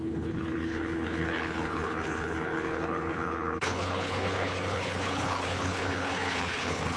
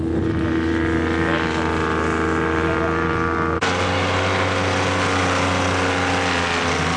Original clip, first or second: second